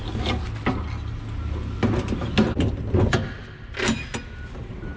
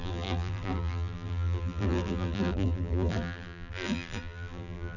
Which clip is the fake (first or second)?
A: second